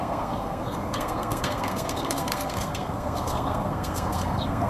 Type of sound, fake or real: fake